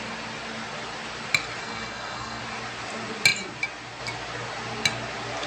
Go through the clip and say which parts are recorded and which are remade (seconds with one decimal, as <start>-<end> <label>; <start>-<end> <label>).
0.0-1.6 recorded; 1.6-2.4 remade; 2.4-5.5 recorded